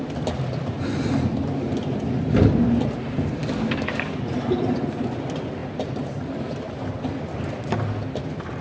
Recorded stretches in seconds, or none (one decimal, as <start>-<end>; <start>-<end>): 0.0-3.4; 4.3-8.6